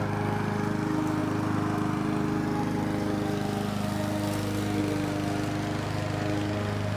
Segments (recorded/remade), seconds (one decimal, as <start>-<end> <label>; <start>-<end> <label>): 0.0-7.0 recorded

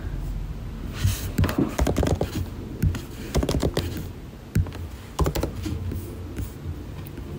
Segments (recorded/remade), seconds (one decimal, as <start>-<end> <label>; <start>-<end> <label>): 0.0-7.4 recorded